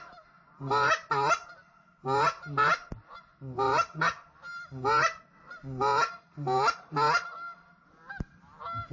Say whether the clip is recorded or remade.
recorded